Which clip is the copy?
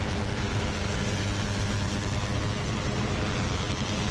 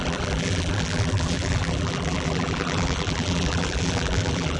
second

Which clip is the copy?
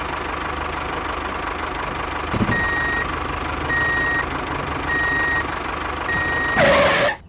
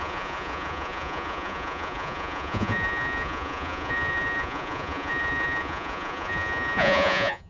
second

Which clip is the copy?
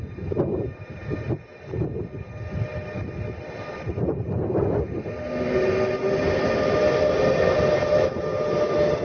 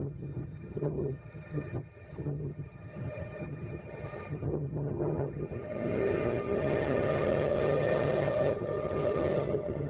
second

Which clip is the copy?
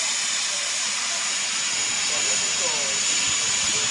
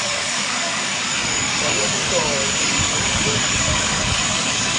second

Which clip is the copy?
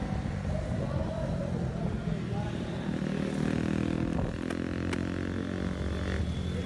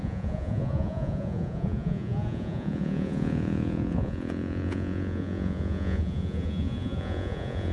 second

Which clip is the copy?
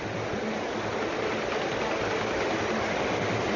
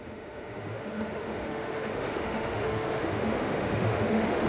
second